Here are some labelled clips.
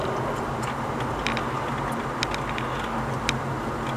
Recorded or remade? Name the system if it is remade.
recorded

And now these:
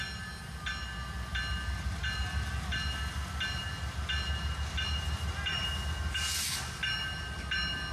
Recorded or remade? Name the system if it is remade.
recorded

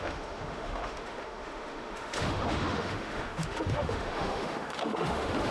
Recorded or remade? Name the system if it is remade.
remade, autoencoder, DAC-VAE